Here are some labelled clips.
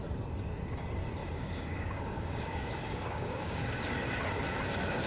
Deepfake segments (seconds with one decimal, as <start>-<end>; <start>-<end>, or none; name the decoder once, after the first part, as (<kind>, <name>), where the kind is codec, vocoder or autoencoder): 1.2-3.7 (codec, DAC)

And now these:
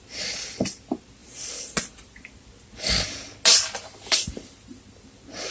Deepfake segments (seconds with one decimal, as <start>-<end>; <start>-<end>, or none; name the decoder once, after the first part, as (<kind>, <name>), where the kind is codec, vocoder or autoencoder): none

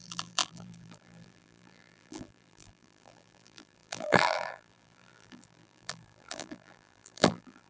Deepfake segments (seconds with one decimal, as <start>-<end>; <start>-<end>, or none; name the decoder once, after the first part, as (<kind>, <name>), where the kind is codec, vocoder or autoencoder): 0.0-7.7 (vocoder, BigVGAN v2)

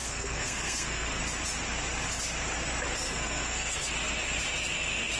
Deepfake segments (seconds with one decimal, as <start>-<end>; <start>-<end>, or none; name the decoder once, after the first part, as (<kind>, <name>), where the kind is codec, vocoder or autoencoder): 0.0-1.2 (codec, SNAC); 2.9-3.9